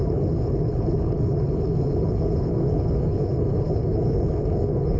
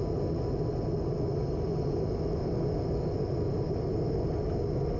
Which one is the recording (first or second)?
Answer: second